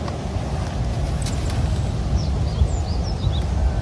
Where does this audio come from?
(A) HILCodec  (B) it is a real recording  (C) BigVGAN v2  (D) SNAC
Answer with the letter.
B